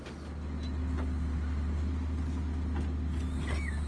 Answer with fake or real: real